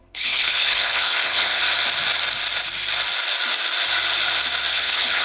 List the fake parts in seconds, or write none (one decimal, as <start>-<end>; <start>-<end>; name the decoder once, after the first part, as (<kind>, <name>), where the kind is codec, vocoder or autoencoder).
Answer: 0.0-1.6 (codec, HILCodec); 4.7-5.2